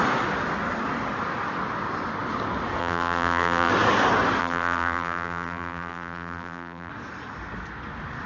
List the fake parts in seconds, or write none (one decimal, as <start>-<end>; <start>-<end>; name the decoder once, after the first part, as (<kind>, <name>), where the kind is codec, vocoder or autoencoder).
2.8-3.7 (vocoder, BigVGAN v2); 4.4-6.9